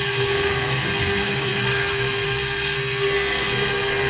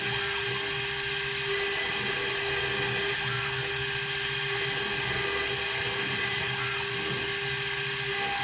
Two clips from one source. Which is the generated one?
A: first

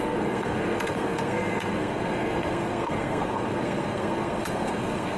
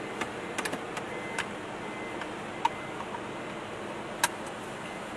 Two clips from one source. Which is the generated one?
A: first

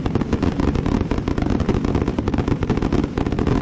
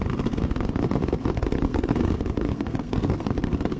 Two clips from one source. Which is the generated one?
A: second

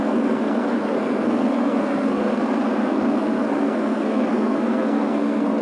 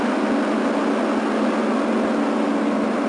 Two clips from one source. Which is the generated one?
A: first